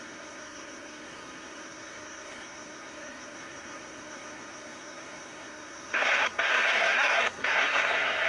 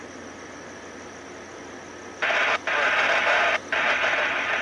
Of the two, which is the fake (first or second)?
first